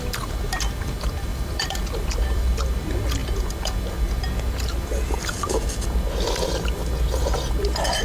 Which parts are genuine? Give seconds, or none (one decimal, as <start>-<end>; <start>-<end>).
0.0-1.3; 2.4-8.0